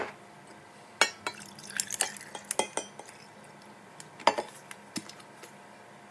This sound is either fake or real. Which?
real